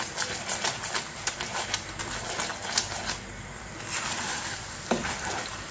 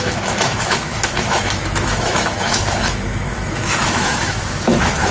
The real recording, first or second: first